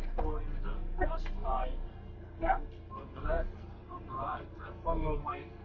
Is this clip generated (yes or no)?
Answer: yes